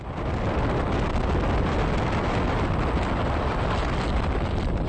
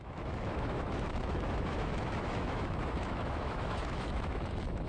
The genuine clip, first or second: first